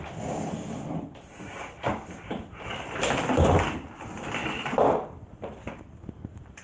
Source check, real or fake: real